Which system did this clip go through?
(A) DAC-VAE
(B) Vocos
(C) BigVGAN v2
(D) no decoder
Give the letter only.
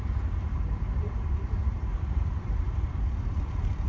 C